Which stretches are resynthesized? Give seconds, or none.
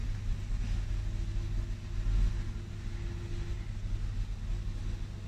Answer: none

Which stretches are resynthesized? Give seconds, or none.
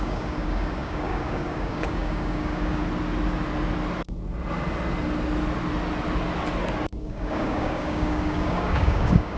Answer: 0.0-2.8 (codec, DAC); 7.0-9.4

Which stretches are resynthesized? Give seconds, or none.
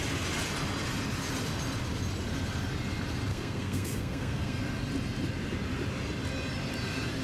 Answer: 3.3-4.6 (codec, SNAC)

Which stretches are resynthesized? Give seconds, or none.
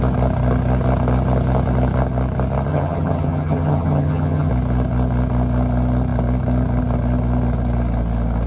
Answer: 2.7-4.5 (vocoder, HiFi-GAN)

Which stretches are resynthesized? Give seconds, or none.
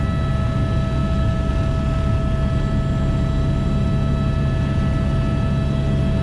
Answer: 1.0-1.5 (autoencoder, DAC-VAE)